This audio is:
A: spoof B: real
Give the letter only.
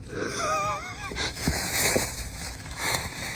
A